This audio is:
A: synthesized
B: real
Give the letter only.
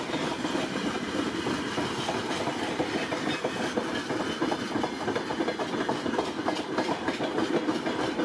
B